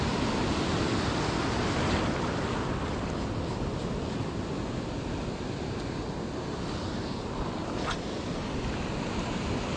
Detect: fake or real real